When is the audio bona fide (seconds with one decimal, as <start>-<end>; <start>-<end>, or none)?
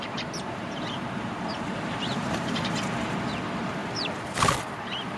3.8-5.2